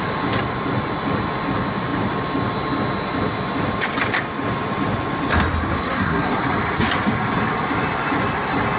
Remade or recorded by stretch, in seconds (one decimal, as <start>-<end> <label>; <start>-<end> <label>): 0.0-5.8 recorded; 5.8-6.4 remade; 6.4-8.8 recorded